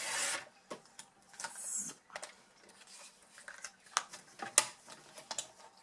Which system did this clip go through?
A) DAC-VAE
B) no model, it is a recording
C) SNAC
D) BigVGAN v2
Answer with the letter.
B